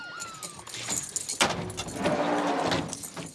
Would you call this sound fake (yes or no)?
no